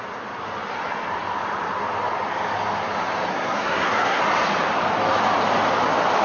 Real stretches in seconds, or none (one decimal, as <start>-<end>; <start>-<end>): 0.0-3.3; 4.2-6.2